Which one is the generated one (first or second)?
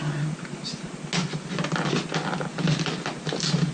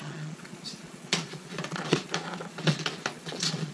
second